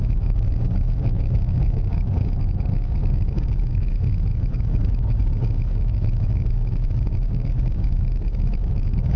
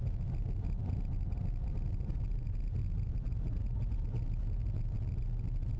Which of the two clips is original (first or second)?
second